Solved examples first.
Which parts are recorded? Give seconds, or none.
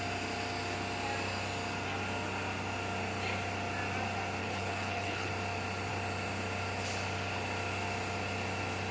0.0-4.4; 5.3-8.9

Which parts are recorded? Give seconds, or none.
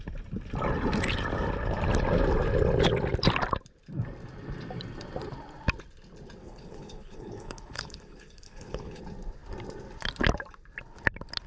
0.0-6.4; 9.0-11.5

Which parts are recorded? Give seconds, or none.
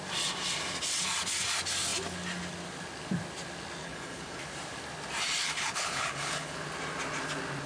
0.0-3.8; 4.4-5.4; 6.6-7.7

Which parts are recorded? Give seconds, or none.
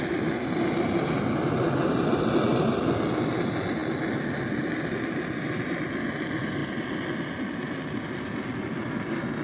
0.0-9.4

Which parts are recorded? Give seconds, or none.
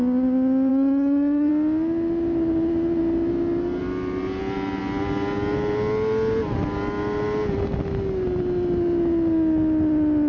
0.0-0.7; 1.5-10.3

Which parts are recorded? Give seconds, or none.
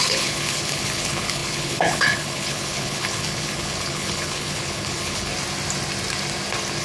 5.3-6.8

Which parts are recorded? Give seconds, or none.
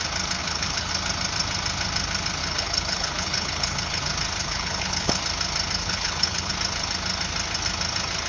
0.0-0.4; 0.9-2.4; 4.0-4.4; 5.2-5.8; 6.5-8.3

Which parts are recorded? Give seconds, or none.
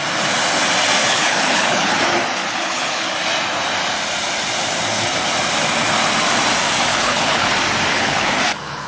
0.0-1.1; 2.0-2.4; 3.1-6.9; 7.5-7.9